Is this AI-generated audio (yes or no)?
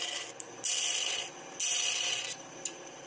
no